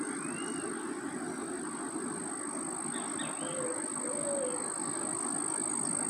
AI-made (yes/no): no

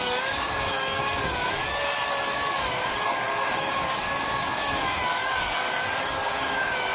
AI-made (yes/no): yes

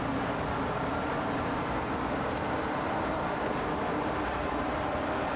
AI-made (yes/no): no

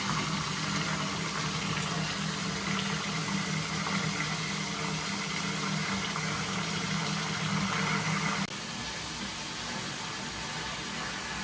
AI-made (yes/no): no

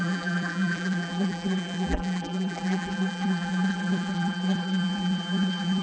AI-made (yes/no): yes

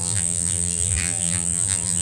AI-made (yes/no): yes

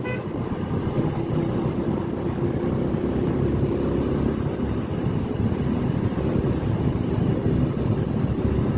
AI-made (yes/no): no